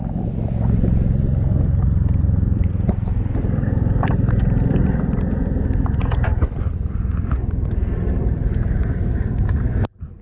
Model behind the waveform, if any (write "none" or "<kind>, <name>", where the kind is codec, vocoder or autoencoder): vocoder, BigVGAN v2